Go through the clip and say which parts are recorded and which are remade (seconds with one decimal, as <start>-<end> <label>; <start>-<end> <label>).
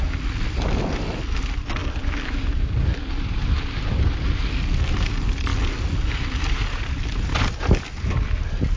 0.0-8.8 recorded